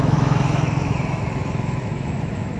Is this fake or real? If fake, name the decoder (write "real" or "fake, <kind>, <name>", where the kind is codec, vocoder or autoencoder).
fake, autoencoder, DAC-VAE